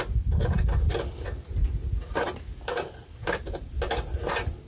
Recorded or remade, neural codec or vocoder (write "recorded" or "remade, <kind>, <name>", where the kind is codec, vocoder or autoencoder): recorded